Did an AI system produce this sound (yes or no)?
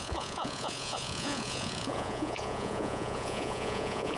yes